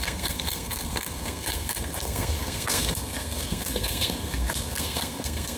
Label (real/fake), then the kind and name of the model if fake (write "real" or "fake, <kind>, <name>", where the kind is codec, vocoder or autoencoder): fake, codec, SNAC